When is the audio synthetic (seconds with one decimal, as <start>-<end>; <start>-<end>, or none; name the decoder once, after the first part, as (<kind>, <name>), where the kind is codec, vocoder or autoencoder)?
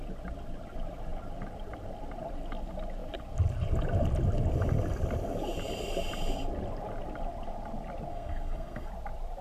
8.1-8.9 (codec, SNAC)